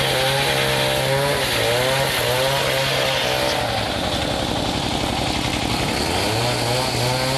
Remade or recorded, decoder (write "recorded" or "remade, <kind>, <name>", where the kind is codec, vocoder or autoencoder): recorded